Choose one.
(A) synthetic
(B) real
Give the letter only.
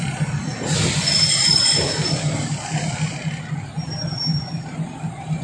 B